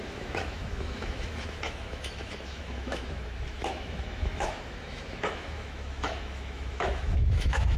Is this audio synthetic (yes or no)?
yes